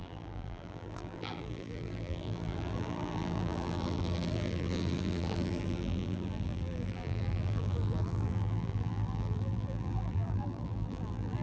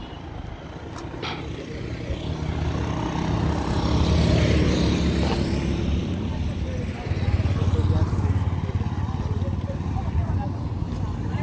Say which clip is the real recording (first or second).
second